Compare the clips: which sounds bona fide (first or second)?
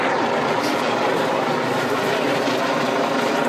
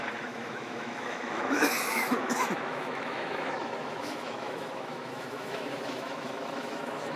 first